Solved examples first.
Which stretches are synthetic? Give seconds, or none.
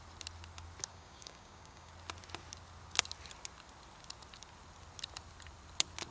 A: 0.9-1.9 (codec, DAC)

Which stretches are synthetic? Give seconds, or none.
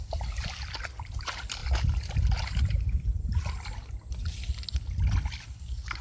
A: none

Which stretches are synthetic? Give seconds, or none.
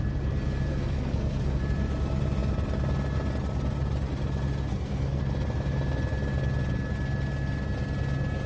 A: 0.7-1.6 (codec, SNAC); 4.7-5.2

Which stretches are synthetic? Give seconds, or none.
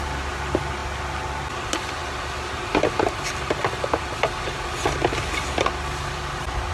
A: none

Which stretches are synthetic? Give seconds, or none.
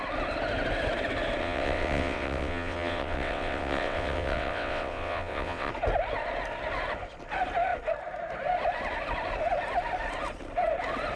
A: 1.4-5.7 (vocoder, WaveNeXt)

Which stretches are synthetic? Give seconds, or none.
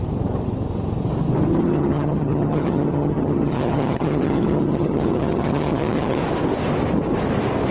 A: 1.6-6.2 (vocoder, HiFi-GAN)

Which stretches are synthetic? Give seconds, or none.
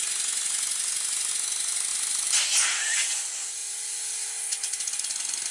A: 1.9-2.4 (vocoder, BigVGAN v2); 3.6-5.1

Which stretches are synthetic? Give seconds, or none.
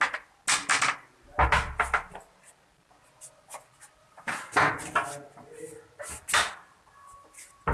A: 4.0-4.7 (vocoder, BigVGAN v2)